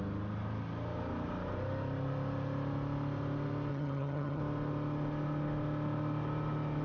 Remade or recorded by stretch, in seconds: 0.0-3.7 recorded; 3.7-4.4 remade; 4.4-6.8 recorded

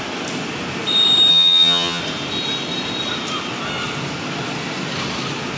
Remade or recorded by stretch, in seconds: 0.0-1.3 recorded; 1.3-2.0 remade; 2.0-5.6 recorded